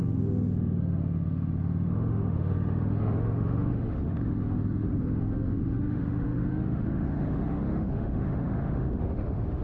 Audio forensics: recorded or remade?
remade